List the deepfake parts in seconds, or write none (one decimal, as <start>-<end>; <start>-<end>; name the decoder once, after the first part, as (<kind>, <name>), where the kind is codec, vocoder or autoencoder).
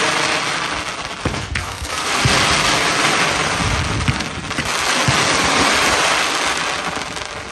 1.2-2.1 (codec, SNAC)